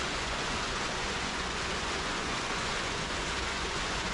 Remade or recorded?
remade